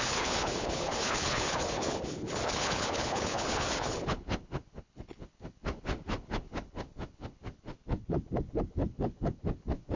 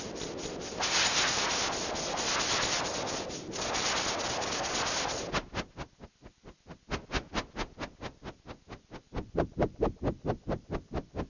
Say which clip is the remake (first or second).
first